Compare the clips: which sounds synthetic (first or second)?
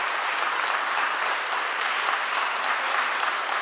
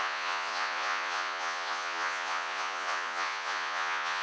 second